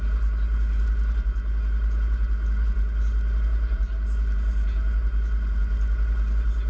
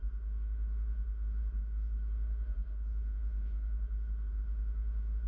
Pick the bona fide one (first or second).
first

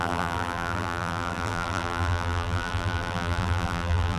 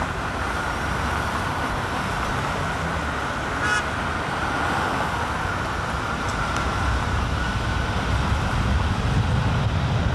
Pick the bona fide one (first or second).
second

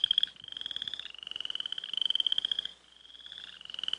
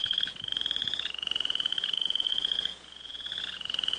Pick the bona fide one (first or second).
first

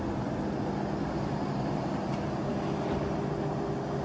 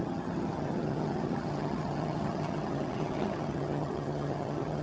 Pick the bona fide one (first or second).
first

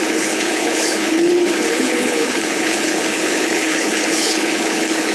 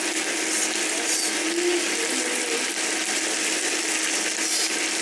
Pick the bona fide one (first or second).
second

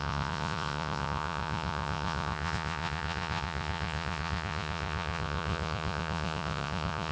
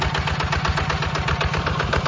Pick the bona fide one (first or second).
second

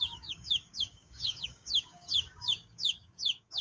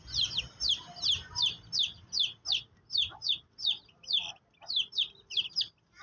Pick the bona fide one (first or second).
second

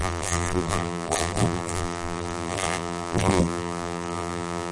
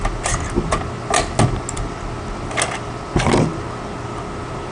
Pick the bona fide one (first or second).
second